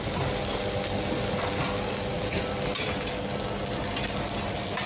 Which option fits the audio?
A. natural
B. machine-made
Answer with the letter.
A